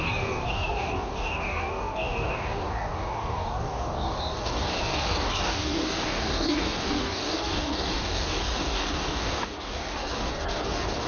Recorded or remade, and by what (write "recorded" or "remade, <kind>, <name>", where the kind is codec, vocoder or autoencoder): remade, codec, DAC